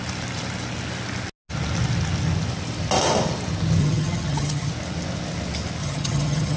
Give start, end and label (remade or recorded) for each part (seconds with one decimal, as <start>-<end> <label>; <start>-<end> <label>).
0.0-3.8 recorded; 3.8-4.7 remade; 4.7-5.8 recorded; 5.8-6.6 remade